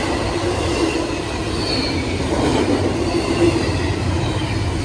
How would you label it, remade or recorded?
recorded